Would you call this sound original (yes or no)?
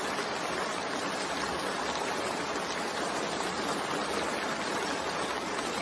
yes